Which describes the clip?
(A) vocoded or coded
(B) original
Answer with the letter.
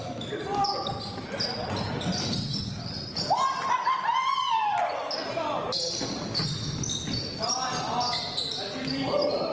B